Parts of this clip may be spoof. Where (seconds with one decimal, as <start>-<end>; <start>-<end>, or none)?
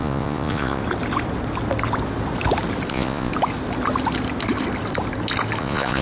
0.0-0.8; 2.9-3.3; 5.6-6.0